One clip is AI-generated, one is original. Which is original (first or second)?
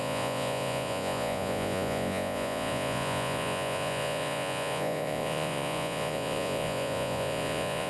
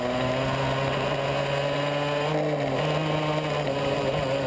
second